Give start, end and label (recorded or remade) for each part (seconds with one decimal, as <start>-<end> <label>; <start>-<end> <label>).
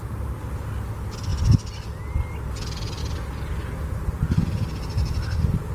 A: 0.0-5.7 recorded